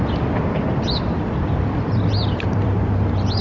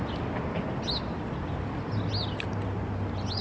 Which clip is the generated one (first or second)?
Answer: first